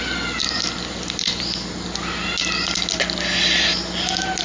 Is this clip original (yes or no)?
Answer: yes